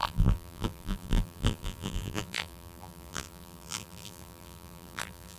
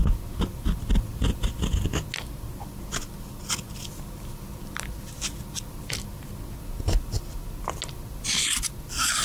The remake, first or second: first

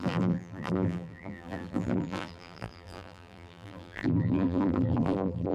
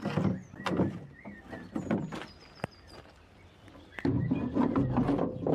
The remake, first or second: first